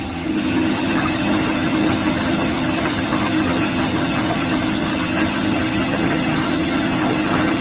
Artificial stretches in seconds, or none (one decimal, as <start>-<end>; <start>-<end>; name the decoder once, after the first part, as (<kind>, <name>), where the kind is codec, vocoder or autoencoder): 0.0-7.6 (vocoder, HiFi-GAN)